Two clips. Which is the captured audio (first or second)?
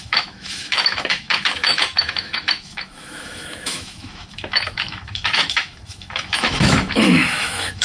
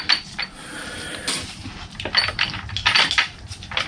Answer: second